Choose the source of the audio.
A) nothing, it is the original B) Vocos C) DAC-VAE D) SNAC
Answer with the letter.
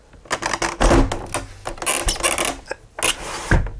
A